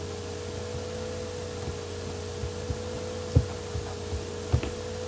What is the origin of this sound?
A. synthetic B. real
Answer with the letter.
B